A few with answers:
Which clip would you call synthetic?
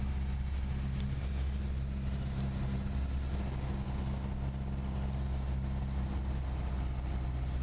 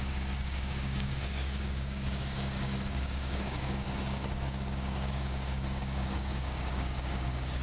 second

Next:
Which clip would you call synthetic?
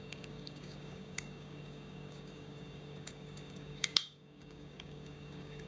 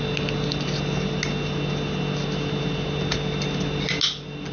first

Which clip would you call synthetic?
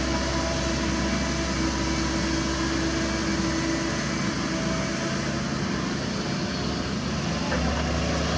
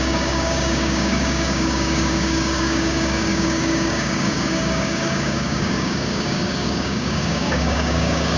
second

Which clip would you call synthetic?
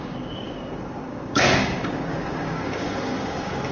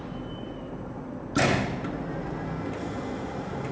first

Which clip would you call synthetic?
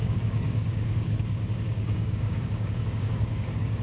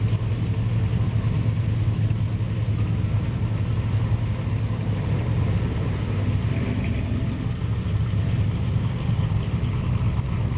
first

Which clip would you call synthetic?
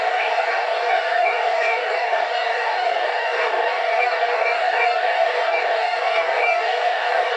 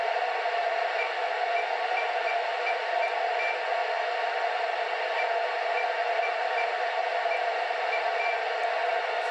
first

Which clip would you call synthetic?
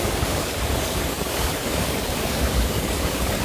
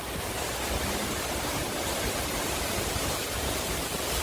first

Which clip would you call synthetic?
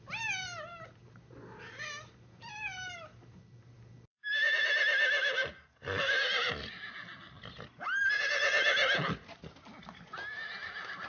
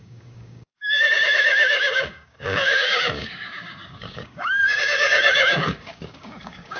second